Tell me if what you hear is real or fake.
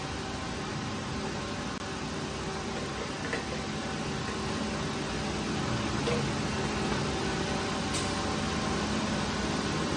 real